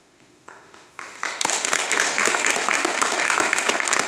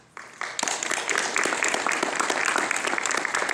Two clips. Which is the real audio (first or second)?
second